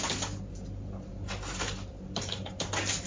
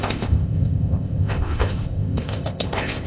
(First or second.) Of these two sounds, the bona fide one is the first